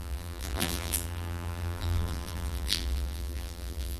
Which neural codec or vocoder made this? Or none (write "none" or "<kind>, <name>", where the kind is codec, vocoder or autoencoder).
vocoder, BigVGAN v2